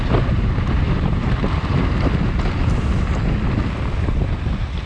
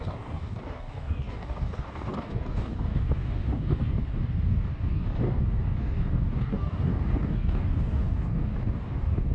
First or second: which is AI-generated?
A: second